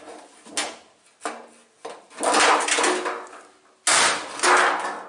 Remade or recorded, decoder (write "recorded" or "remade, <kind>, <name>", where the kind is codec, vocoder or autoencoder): recorded